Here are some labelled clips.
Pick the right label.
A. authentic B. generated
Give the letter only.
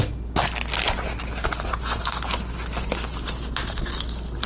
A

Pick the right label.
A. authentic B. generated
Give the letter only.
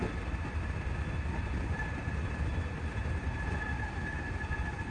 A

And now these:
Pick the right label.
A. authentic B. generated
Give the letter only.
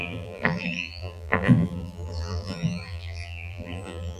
B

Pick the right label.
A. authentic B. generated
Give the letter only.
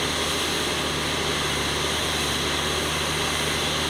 A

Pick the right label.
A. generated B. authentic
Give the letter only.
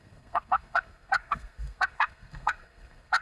A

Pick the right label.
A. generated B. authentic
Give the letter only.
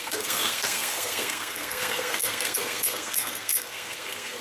A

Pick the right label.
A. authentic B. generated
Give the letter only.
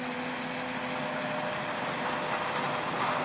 A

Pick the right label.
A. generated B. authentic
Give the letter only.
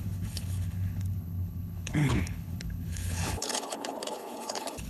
A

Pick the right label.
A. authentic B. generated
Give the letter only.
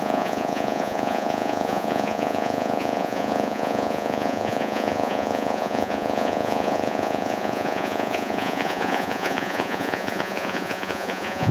B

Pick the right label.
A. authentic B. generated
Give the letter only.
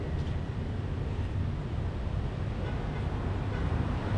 A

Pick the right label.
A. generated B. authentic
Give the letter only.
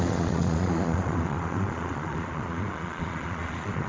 A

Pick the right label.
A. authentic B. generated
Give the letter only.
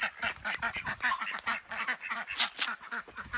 A